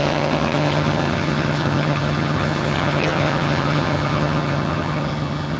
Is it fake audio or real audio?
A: fake